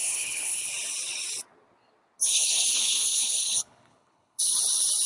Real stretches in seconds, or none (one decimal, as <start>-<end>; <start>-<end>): 0.7-2.3; 4.4-5.1